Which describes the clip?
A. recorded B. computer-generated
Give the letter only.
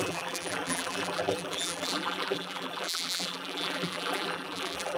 B